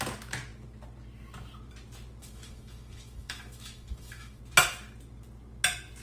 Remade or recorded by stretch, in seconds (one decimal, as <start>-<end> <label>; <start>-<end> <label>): 0.0-2.2 recorded; 2.2-4.4 remade; 4.4-6.0 recorded